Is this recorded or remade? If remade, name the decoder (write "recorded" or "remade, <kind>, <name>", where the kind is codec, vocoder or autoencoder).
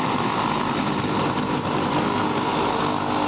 recorded